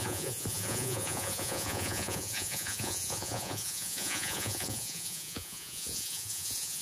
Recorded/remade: remade